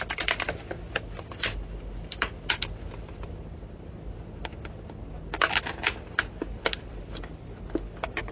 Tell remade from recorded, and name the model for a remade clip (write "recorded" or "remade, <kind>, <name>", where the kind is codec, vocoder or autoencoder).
recorded